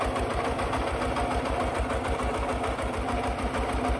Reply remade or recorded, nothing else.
recorded